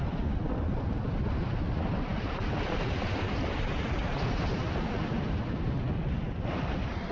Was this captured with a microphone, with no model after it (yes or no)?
no